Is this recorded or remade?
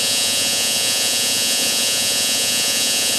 remade